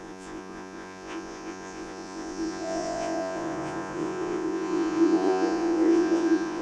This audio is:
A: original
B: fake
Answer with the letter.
B